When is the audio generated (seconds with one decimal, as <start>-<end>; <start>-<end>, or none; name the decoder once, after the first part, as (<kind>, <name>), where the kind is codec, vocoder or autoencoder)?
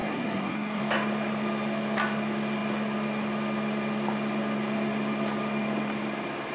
0.0-0.8 (codec, SNAC)